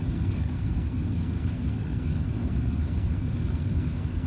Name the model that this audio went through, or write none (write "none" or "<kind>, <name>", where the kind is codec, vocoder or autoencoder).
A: codec, SNAC